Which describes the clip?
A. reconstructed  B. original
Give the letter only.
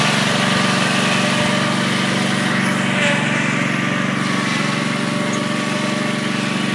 B